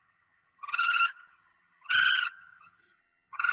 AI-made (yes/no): yes